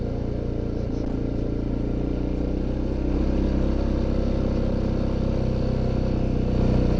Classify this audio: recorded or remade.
recorded